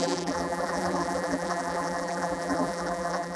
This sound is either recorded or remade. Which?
remade